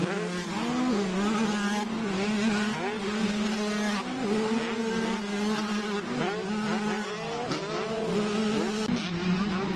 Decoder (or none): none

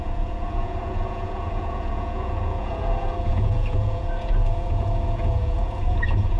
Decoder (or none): vocoder, Vocos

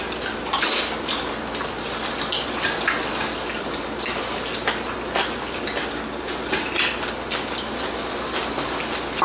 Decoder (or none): none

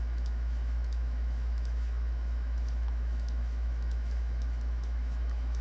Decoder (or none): autoencoder, DAC-VAE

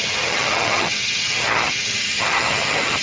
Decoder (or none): vocoder, HiFi-GAN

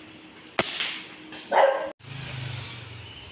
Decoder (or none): none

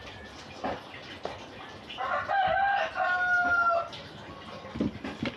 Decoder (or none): none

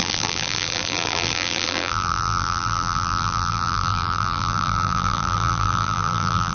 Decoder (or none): vocoder, BigVGAN v2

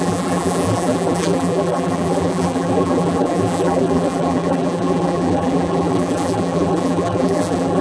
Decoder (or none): vocoder, BigVGAN v2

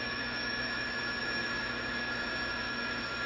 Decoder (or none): autoencoder, DAC-VAE